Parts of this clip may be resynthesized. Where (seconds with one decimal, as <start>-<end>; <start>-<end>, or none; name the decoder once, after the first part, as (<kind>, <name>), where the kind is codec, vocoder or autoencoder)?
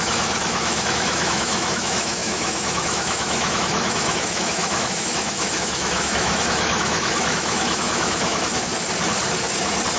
0.0-8.7 (autoencoder, DAC-VAE)